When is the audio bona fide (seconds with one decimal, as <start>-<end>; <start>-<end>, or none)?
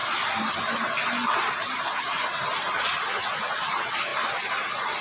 0.0-5.0